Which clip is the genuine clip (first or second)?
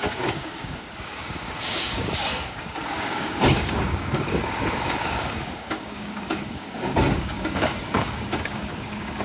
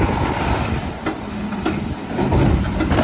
second